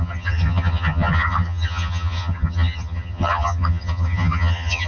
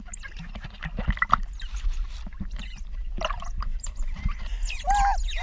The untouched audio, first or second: second